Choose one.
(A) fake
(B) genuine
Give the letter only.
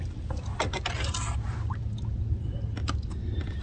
B